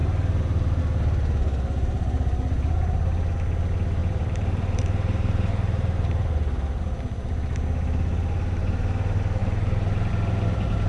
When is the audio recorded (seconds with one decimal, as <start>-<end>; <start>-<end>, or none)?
0.0-4.0; 6.8-9.4; 10.1-10.9